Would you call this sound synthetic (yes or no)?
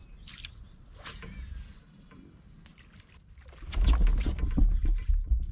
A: no